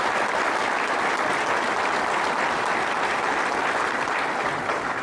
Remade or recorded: recorded